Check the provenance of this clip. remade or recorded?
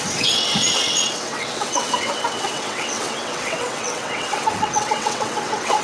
remade